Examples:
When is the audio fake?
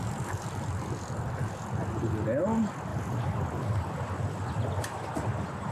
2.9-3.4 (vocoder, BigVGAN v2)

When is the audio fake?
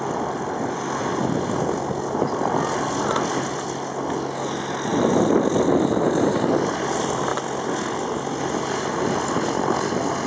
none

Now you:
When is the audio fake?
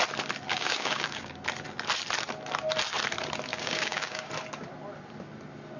0.5-1.3 (codec, DAC); 3.5-4.3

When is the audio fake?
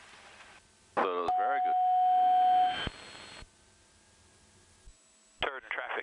none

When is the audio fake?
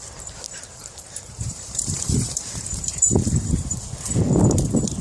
0.8-3.8 (vocoder, BigVGAN v2)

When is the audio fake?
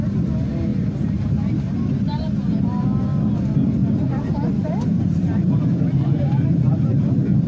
0.7-1.3 (vocoder, BigVGAN v2); 3.8-7.1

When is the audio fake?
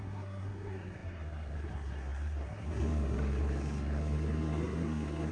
0.0-5.3 (codec, SNAC)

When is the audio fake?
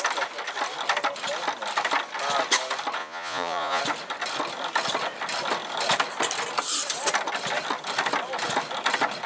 3.0-3.8 (vocoder, Vocos)